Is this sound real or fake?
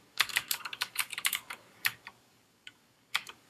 fake